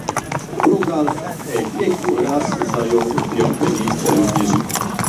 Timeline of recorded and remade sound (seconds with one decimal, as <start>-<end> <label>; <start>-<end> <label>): 0.0-0.8 recorded; 0.8-2.5 remade; 2.5-5.1 recorded